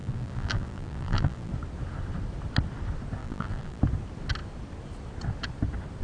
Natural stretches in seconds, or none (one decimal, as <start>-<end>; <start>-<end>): 1.5-3.2; 3.8-6.0